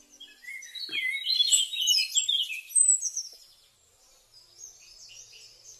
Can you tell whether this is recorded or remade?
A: recorded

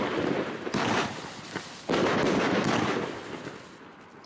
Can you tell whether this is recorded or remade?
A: recorded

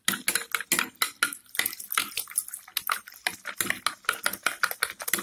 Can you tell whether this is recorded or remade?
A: recorded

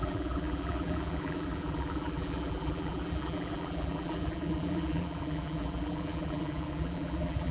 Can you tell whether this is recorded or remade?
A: remade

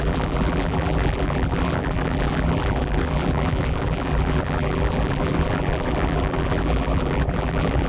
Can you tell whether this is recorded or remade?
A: remade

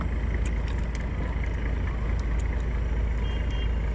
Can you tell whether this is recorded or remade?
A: recorded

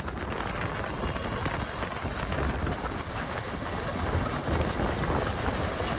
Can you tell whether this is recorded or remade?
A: recorded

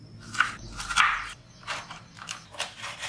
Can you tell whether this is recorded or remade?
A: remade